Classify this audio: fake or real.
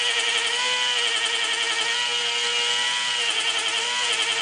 real